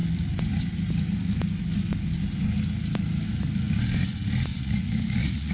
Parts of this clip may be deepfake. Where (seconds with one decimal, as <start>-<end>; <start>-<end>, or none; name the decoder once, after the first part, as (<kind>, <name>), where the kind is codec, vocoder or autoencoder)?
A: 4.5-5.5 (vocoder, Vocos)